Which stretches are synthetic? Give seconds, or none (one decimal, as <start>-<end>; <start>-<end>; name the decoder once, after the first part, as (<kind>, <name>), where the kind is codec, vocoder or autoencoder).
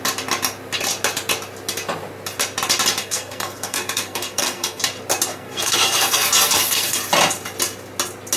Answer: 3.0-4.8 (codec, SNAC); 5.3-7.0